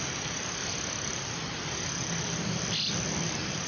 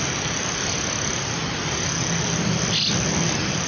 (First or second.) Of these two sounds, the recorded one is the second